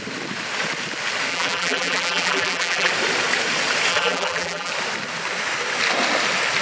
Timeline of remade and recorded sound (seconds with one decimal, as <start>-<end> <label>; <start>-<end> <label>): 0.0-1.3 recorded; 1.3-2.9 remade; 2.9-3.9 recorded; 3.9-4.7 remade; 4.7-6.6 recorded